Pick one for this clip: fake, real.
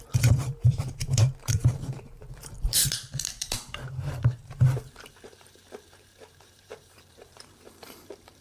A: fake